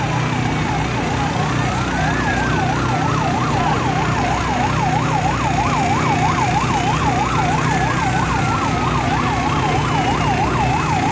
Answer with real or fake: real